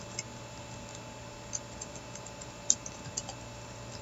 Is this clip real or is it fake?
real